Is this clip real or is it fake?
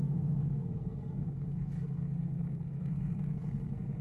fake